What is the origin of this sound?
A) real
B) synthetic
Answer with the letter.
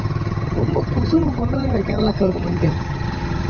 B